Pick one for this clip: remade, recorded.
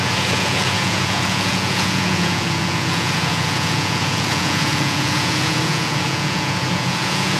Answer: remade